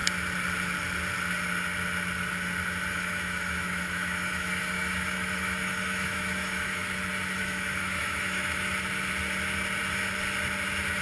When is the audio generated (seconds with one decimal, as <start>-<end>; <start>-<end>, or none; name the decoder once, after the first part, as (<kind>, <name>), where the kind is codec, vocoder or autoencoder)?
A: 2.9-6.8 (autoencoder, DAC-VAE); 7.4-8.7